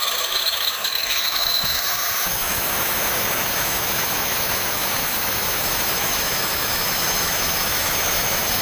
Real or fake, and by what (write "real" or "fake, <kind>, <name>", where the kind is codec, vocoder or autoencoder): fake, autoencoder, DAC-VAE